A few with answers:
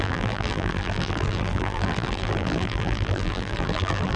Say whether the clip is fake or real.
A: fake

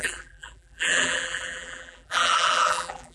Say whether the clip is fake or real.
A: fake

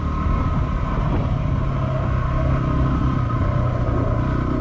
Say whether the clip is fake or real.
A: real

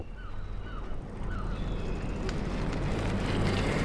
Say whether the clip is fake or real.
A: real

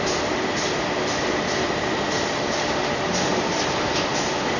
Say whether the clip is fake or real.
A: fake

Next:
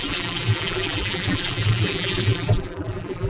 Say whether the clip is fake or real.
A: fake